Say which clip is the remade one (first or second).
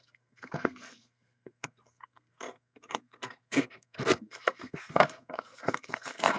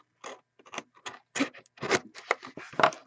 first